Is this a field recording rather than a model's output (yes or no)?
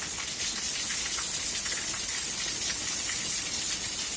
yes